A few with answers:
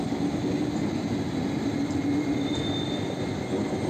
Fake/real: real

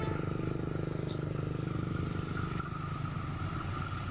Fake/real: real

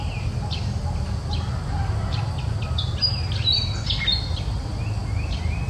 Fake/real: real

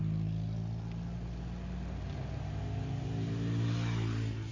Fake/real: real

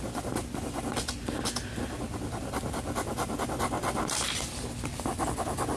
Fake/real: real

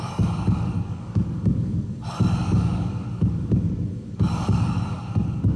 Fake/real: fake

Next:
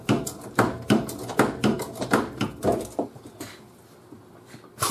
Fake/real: real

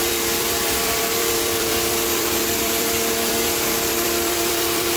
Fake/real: fake